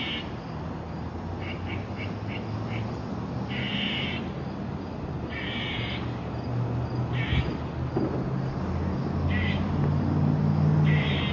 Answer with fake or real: real